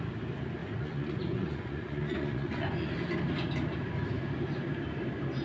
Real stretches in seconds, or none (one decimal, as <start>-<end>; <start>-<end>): 0.0-0.6; 2.9-5.4